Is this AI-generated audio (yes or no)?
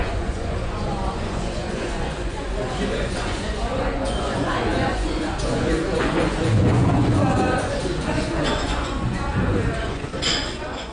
yes